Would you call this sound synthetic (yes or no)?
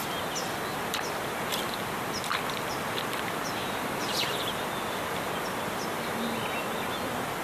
no